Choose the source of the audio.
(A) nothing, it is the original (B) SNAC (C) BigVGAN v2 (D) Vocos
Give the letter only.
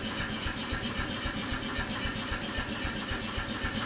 C